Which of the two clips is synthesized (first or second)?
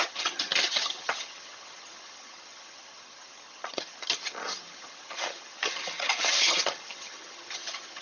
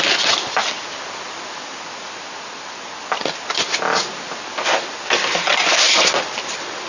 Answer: first